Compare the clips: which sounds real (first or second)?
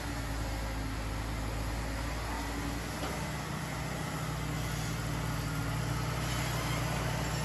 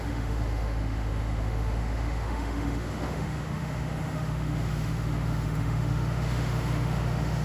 first